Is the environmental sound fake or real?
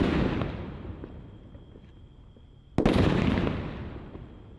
real